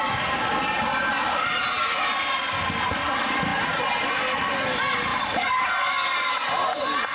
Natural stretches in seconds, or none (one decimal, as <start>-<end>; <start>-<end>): 0.0-5.1; 5.8-7.1